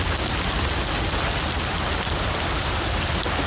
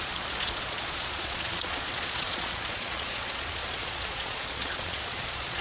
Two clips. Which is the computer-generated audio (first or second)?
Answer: second